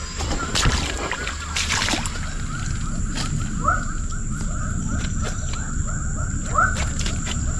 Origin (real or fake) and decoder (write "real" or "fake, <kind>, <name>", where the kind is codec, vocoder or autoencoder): real